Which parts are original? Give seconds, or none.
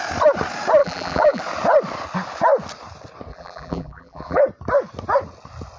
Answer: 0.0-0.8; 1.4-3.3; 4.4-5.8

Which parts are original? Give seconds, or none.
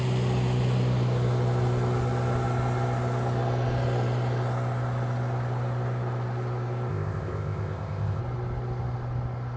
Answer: 0.0-6.9; 8.2-9.6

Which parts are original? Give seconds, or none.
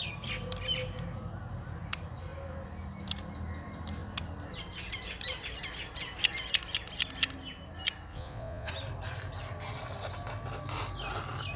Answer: 0.0-8.1; 8.7-11.6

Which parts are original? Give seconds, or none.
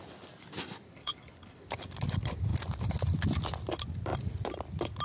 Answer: 0.0-0.9; 1.6-5.0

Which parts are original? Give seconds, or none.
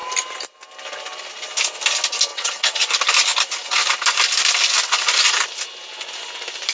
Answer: 0.0-2.3; 2.9-6.7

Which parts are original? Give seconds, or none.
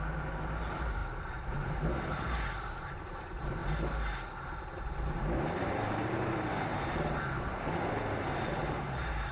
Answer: 3.6-4.8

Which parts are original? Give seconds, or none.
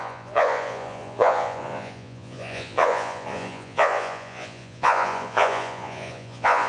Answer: none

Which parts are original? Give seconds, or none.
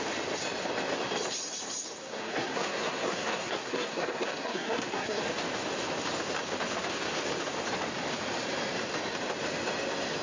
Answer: 0.0-2.0; 5.2-10.2